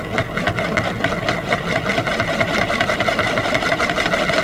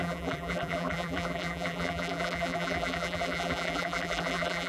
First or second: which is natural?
first